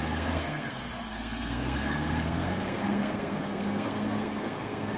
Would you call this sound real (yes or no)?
no